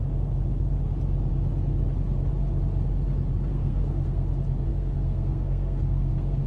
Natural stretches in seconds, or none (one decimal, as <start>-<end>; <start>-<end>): 0.0-3.5; 4.3-4.7